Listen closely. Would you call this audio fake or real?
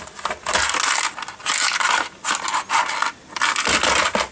real